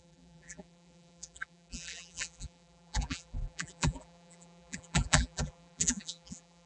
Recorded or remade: remade